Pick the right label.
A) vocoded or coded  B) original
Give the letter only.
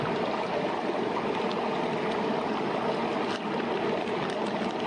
B